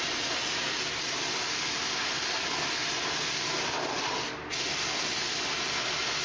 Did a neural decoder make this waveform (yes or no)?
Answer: no